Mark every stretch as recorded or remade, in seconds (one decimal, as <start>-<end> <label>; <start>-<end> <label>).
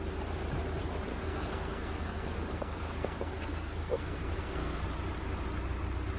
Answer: 0.0-1.1 recorded; 1.1-4.8 remade; 4.8-6.2 recorded